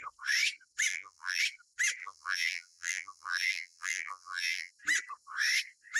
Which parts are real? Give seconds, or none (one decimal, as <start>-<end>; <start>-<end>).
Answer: 0.0-0.9; 1.4-2.0; 4.7-6.0